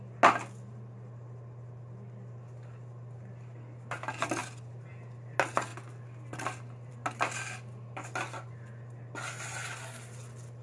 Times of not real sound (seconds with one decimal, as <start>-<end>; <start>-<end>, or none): none